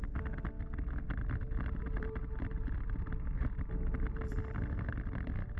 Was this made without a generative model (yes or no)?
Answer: yes